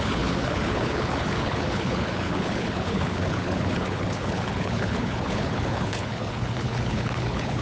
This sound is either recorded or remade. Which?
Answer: remade